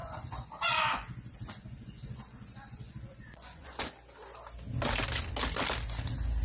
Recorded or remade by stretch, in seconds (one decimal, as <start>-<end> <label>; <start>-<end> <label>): 0.0-3.8 remade; 3.8-6.4 recorded